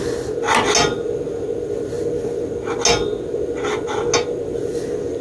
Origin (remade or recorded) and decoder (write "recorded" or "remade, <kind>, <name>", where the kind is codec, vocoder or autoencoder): recorded